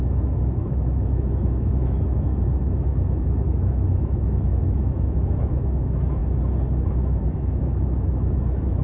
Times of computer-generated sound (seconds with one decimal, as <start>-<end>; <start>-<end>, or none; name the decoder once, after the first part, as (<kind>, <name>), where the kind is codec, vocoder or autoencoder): 0.0-6.2 (autoencoder, DAC-VAE); 6.9-8.8